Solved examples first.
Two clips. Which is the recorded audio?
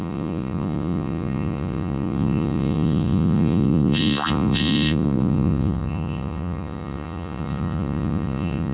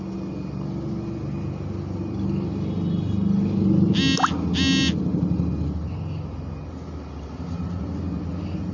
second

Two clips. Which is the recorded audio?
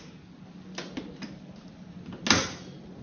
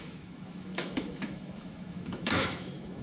first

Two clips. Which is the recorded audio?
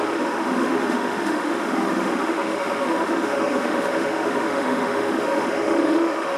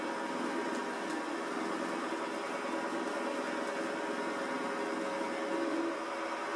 second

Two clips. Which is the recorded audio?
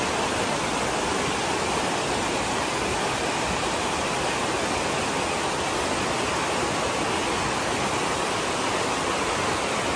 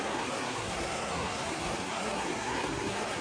first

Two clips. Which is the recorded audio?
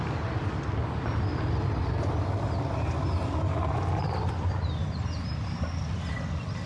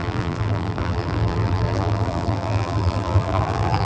first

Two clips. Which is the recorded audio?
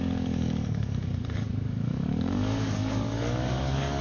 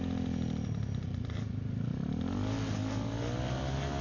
second